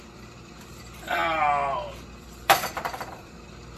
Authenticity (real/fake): fake